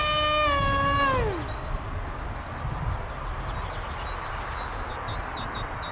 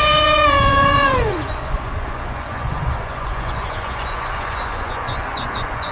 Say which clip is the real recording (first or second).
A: first